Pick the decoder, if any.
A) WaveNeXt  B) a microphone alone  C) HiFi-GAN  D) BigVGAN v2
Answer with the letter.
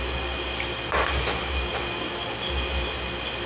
D